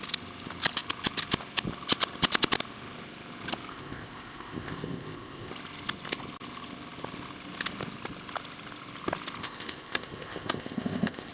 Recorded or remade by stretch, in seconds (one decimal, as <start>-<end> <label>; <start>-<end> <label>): 0.0-3.7 recorded; 3.7-5.5 remade; 5.5-9.4 recorded; 9.4-11.3 remade